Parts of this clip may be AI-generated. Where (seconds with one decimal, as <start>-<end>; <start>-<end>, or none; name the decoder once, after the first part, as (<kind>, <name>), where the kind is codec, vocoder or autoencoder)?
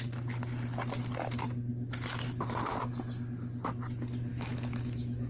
4.3-5.3 (autoencoder, DAC-VAE)